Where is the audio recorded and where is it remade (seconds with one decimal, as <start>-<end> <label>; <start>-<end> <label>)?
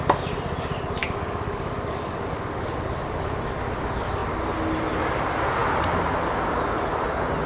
0.0-1.0 recorded; 1.0-2.7 remade; 2.7-7.5 recorded